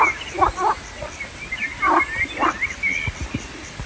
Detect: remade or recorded recorded